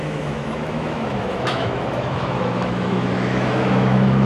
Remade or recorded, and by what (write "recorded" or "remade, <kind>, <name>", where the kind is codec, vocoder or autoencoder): remade, autoencoder, DAC-VAE